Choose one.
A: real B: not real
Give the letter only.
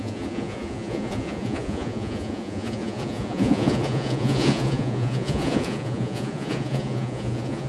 B